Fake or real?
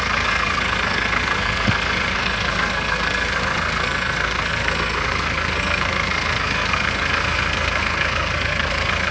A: fake